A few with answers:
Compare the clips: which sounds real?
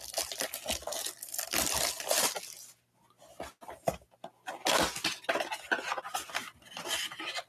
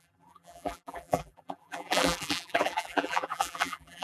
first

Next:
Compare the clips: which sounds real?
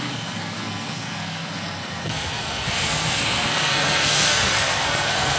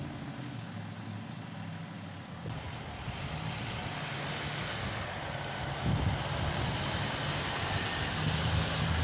second